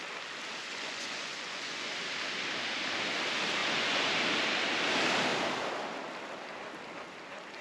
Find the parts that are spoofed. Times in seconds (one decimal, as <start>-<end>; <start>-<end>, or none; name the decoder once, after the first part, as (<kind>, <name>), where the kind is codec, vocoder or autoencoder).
0.6-1.9 (vocoder, Vocos); 3.6-4.1